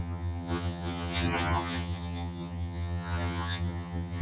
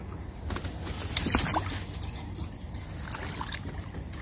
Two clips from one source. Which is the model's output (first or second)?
first